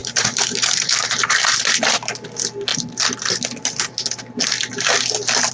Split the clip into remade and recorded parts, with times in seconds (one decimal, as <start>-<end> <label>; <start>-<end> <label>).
0.0-1.4 remade; 1.4-5.5 recorded